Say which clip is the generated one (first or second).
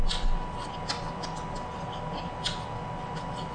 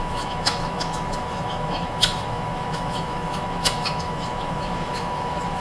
second